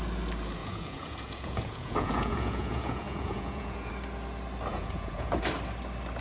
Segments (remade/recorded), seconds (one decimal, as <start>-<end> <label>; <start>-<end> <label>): 0.0-0.6 recorded; 0.6-3.9 remade; 3.9-4.7 recorded; 4.7-5.3 remade; 5.3-6.2 recorded